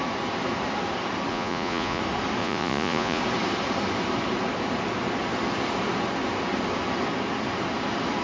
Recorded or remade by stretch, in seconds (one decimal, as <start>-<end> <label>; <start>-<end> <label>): 0.0-1.3 recorded; 1.3-2.0 remade; 2.0-2.4 recorded; 2.4-3.2 remade; 3.2-8.2 recorded